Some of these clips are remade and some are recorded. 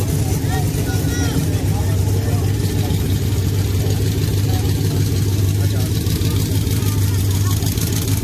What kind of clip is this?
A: recorded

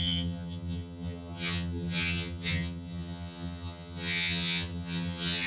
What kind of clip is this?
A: remade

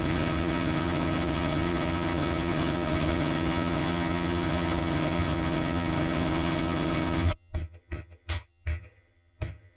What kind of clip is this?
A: remade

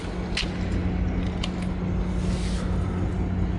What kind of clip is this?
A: recorded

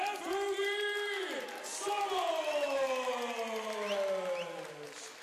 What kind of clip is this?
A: recorded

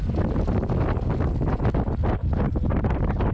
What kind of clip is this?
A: recorded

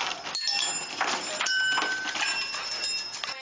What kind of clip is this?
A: recorded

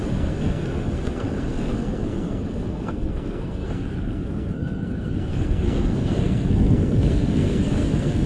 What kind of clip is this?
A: remade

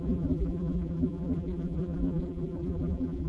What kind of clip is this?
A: remade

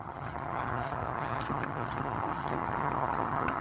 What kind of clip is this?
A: remade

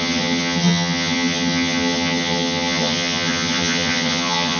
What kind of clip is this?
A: remade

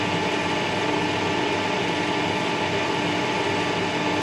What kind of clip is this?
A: recorded